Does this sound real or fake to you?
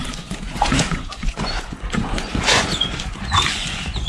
fake